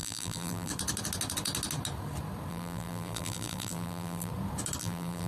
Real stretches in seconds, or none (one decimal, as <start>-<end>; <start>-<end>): 0.7-2.5; 4.3-4.8